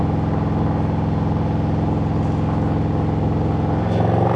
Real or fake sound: real